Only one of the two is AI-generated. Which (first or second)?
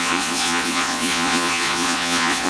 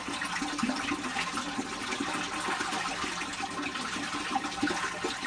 first